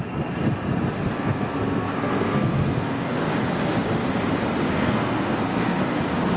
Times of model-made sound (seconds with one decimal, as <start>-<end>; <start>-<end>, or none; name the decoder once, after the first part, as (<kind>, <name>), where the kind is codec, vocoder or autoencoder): 1.0-3.3 (codec, SNAC); 4.7-6.0